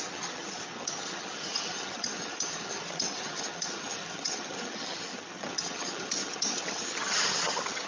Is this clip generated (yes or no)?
yes